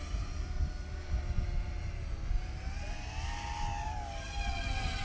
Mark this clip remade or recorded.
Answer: recorded